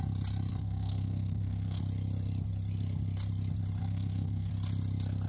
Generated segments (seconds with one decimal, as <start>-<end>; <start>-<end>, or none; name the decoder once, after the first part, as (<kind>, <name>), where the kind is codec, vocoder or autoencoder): 0.5-1.8 (codec, SNAC); 3.8-4.5